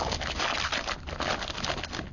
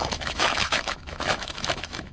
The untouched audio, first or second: first